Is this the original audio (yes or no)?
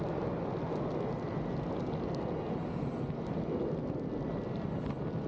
yes